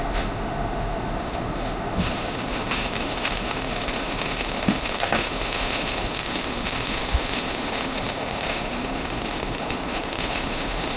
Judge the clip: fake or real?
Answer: fake